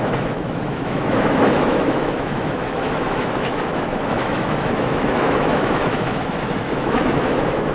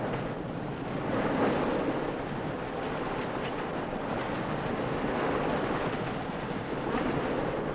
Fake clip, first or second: first